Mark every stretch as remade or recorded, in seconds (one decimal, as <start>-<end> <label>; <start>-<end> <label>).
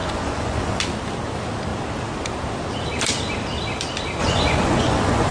0.0-0.8 remade; 0.8-4.2 recorded; 4.2-5.3 remade